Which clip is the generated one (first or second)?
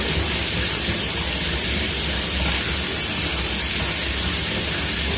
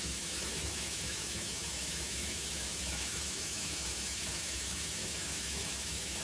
second